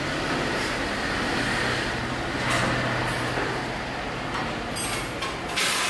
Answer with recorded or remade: recorded